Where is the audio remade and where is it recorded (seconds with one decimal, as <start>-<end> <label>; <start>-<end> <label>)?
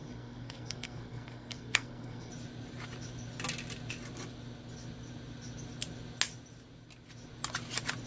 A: 0.0-2.3 remade; 2.3-8.1 recorded